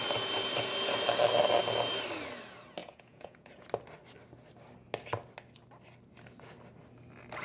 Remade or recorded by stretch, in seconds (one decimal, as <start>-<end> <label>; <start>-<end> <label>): 0.0-2.8 recorded; 2.8-3.7 remade; 3.7-7.4 recorded